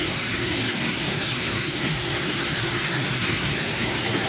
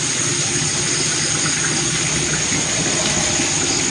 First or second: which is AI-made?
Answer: first